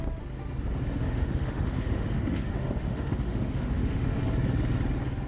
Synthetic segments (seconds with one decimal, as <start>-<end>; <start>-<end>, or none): 1.0-4.2